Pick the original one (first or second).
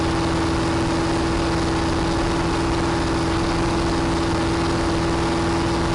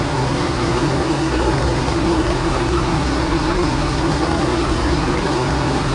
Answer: first